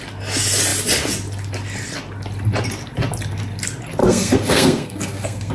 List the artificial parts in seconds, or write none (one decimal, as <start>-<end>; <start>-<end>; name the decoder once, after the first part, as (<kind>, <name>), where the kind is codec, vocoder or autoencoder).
4.0-5.5 (codec, SNAC)

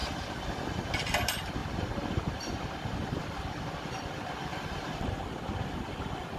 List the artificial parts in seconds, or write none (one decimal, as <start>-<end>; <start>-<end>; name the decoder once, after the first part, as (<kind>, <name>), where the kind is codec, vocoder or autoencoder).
4.5-5.2 (vocoder, BigVGAN v2)

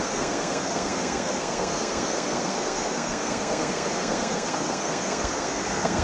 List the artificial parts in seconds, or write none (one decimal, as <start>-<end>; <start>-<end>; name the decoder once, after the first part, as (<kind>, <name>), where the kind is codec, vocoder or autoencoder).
0.0-6.0 (codec, SNAC)

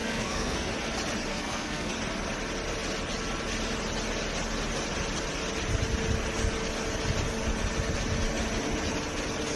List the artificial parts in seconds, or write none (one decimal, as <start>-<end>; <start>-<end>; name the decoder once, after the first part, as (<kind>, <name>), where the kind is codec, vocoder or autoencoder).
0.0-0.7 (codec, SNAC); 1.3-1.9

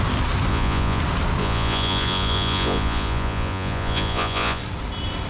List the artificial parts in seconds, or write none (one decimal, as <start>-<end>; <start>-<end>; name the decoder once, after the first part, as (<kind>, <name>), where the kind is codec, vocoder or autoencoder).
0.5-1.0 (vocoder, Vocos); 1.4-4.6